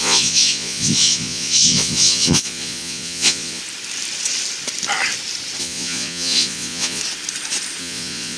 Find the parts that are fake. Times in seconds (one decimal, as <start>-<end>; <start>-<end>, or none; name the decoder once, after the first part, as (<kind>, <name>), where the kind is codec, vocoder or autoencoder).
0.0-3.6 (vocoder, Vocos); 5.6-7.0; 7.8-8.4

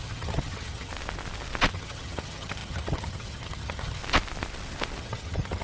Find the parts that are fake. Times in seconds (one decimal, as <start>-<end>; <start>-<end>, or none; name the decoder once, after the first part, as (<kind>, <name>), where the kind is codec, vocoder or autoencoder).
0.0-0.9 (vocoder, HiFi-GAN); 1.7-4.0; 5.0-5.6

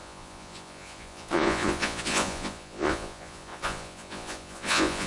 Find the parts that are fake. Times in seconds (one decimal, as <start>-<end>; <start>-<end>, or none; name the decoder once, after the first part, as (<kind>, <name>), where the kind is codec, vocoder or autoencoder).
0.0-5.1 (vocoder, Vocos)

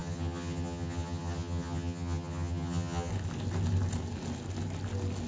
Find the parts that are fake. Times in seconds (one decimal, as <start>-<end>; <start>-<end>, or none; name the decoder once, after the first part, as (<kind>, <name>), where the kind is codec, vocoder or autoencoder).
0.0-3.1 (vocoder, HiFi-GAN)